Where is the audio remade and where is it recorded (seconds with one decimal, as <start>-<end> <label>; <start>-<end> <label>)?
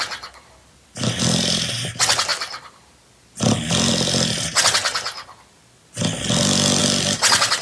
0.0-7.6 recorded